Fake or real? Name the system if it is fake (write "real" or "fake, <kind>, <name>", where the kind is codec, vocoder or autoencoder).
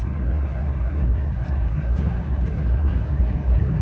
fake, codec, SNAC